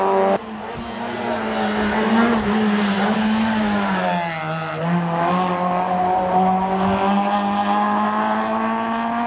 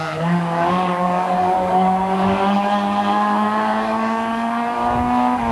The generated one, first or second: second